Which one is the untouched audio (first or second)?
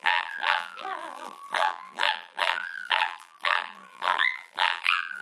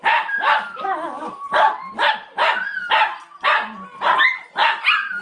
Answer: second